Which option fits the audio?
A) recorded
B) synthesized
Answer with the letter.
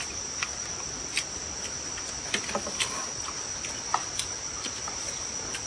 A